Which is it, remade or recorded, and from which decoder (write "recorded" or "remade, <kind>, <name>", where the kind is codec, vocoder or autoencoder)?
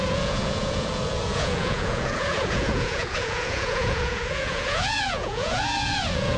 remade, vocoder, Vocos